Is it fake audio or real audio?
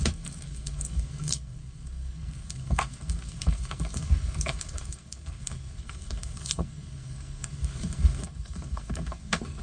fake